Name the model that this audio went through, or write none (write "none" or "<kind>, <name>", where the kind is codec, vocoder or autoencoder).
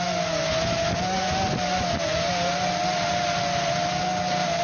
none